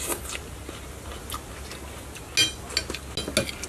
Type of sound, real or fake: real